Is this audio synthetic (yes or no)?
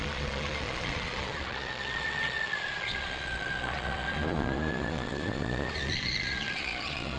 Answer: yes